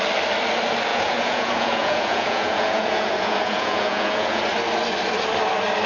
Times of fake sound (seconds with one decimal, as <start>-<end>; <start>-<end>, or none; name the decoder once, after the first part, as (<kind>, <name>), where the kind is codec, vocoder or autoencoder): 0.9-4.4 (vocoder, Vocos)